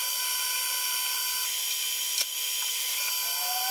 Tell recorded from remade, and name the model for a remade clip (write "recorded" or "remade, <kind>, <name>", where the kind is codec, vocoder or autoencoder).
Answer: recorded